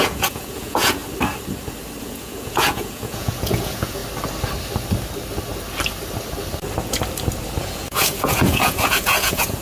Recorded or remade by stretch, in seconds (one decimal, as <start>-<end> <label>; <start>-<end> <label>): 0.0-1.0 remade; 1.0-2.0 recorded; 2.0-4.0 remade; 4.0-7.6 recorded; 7.6-9.6 remade